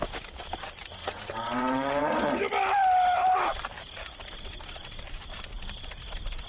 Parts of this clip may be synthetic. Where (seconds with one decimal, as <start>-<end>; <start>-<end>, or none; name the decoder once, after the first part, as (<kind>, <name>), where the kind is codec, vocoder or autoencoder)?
1.0-2.3 (vocoder, WaveNeXt)